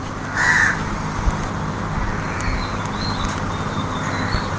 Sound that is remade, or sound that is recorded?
recorded